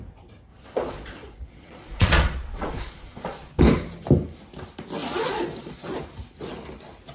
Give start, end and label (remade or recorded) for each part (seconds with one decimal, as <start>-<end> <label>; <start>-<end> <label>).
0.0-0.5 recorded; 0.5-3.6 remade; 3.6-5.0 recorded; 5.0-5.9 remade; 5.9-7.1 recorded